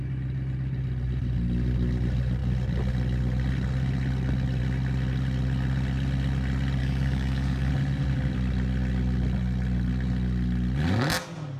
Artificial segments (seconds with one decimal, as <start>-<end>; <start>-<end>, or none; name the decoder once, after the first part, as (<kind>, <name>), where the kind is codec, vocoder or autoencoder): 6.8-7.7 (codec, DAC)